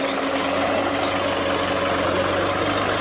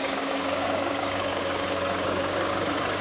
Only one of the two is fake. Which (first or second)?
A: second